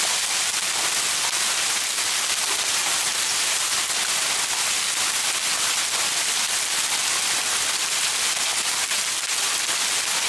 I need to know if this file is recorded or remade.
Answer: recorded